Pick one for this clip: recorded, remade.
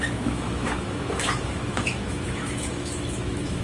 remade